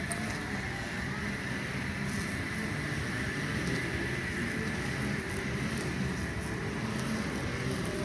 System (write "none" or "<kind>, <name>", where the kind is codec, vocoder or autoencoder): none